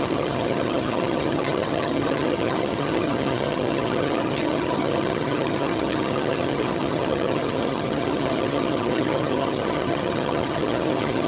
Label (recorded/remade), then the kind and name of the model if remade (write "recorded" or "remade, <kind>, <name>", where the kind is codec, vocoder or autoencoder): remade, vocoder, HiFi-GAN